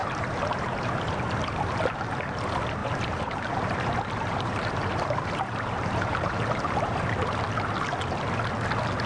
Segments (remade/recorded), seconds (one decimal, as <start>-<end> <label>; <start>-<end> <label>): 0.0-1.1 remade; 1.1-2.8 recorded; 2.8-7.1 remade; 7.1-9.1 recorded